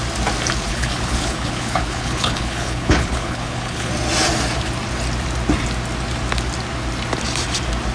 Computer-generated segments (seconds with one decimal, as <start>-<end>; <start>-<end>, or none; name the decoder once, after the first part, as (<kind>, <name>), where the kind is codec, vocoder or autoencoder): 0.7-3.9 (codec, HILCodec)

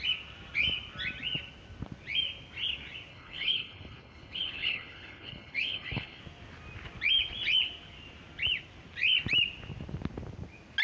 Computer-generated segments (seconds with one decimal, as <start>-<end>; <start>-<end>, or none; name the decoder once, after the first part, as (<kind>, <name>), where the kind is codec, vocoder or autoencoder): 3.1-6.2 (codec, HILCodec)